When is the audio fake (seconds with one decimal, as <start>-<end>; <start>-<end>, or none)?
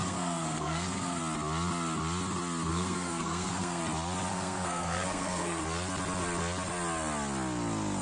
0.0-1.2; 2.7-3.8; 4.3-5.6